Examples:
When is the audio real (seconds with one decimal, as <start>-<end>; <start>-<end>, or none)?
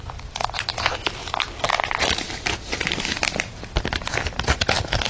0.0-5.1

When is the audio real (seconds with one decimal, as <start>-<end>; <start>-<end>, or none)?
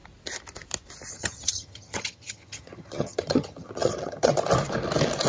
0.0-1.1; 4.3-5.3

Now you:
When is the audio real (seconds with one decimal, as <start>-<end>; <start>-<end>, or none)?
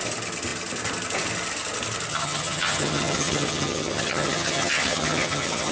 0.0-2.1